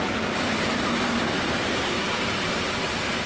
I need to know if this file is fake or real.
real